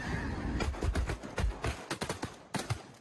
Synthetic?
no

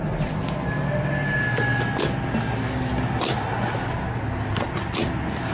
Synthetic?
no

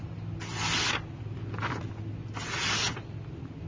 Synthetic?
no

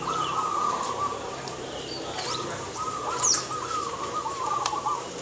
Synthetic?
yes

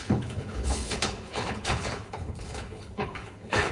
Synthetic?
yes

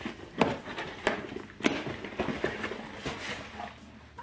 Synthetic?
no